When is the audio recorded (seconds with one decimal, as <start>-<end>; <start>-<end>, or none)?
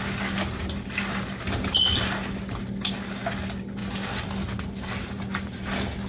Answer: 0.0-6.1